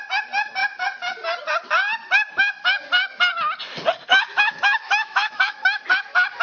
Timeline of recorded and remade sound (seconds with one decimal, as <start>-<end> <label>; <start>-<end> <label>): 0.0-4.1 recorded; 4.1-5.8 remade; 5.8-6.4 recorded